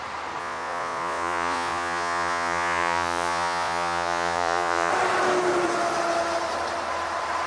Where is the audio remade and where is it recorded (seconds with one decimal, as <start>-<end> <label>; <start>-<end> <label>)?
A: 0.0-0.4 recorded; 0.4-4.9 remade; 4.9-7.5 recorded